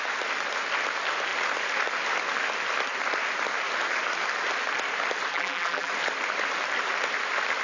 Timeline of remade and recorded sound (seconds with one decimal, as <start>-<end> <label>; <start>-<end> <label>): 0.0-5.3 recorded; 5.3-5.9 remade; 5.9-7.6 recorded